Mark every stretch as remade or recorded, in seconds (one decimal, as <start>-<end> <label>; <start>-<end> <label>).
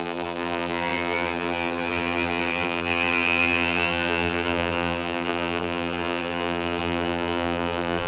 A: 0.0-8.1 remade